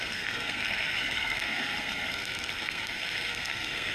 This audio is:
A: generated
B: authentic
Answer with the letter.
A